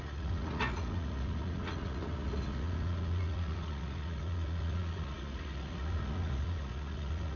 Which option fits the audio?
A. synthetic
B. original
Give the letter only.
A